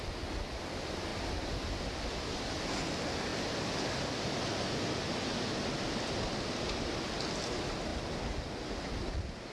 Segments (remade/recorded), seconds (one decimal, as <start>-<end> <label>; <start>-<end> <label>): 0.0-9.5 recorded